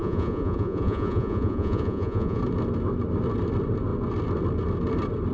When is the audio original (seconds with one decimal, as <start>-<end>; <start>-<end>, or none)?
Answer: 2.4-5.3